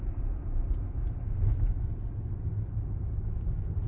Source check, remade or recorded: remade